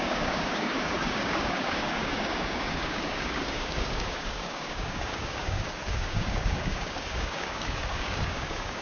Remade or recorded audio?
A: remade